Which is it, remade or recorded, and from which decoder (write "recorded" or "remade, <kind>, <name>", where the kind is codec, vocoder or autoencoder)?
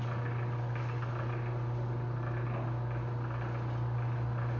recorded